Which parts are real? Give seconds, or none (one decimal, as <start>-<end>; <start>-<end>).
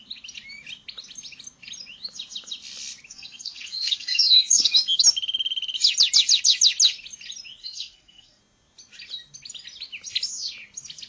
0.0-3.1; 4.7-7.6; 8.4-11.1